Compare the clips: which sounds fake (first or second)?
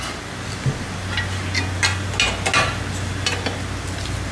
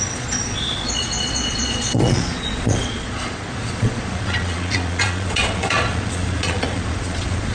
second